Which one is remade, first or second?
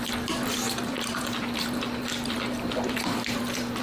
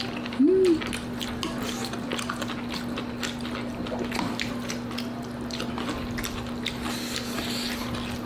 first